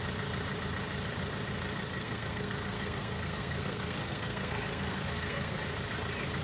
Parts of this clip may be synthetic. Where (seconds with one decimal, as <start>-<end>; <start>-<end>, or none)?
1.8-5.6

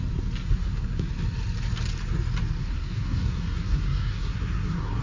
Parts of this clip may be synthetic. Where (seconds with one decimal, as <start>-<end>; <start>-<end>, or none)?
0.4-1.1; 2.6-5.0